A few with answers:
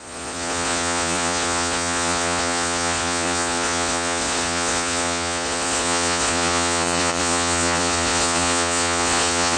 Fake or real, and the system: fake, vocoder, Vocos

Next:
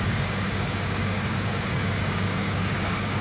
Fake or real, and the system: fake, codec, DAC